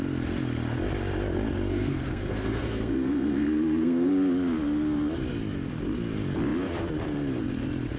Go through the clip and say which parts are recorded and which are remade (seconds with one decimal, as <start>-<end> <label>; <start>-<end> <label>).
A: 0.0-1.7 recorded; 1.7-4.1 remade; 4.1-8.0 recorded